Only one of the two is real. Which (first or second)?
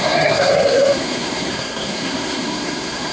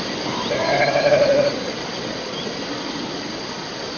second